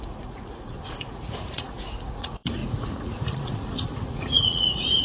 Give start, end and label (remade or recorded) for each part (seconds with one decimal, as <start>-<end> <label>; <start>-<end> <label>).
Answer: 0.0-5.0 remade